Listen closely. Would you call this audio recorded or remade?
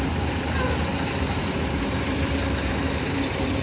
remade